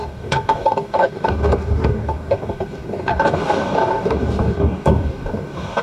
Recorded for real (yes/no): no